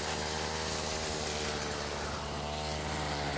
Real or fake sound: real